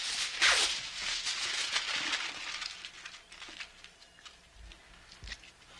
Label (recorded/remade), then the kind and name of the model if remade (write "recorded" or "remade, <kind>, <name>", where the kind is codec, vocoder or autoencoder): recorded